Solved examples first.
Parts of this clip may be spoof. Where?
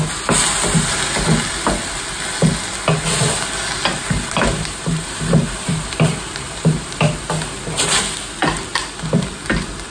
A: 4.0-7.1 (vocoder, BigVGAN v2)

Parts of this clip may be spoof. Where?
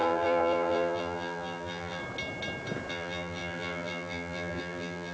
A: 0.0-2.0 (vocoder, BigVGAN v2); 2.9-5.1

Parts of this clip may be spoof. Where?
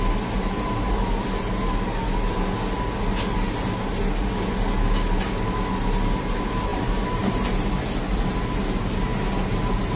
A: 6.7-7.3 (vocoder, BigVGAN v2)